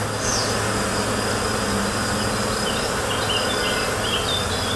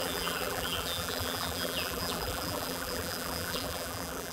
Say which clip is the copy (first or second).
second